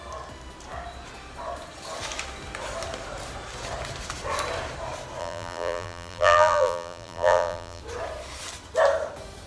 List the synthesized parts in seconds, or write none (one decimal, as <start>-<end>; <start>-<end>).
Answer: 5.2-7.8